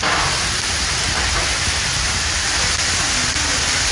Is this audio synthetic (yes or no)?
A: no